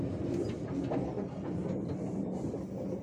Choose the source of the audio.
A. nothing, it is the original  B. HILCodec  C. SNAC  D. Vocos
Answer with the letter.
A